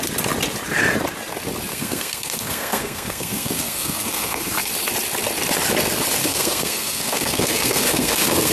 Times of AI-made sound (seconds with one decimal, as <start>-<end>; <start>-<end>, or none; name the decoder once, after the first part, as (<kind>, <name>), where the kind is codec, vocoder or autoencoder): 1.7-4.7 (codec, SNAC); 6.2-8.5